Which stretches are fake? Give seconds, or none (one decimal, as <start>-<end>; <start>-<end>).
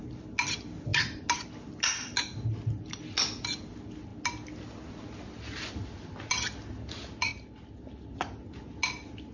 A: none